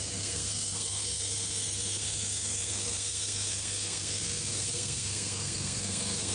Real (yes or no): no